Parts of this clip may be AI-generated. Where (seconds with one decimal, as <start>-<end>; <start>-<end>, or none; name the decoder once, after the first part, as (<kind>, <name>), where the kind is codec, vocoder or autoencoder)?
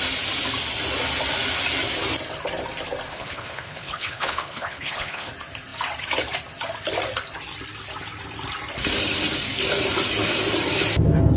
3.1-5.3 (codec, HILCodec)